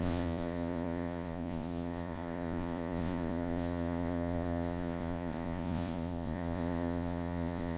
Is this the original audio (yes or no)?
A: no